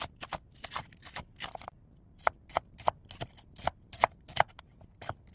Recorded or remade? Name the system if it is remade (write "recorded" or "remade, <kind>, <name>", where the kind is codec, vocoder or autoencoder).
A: recorded